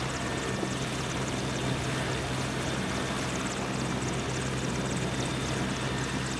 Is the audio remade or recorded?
recorded